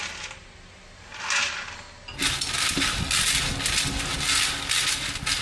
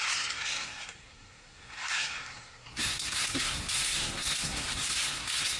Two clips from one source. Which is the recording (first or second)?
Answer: first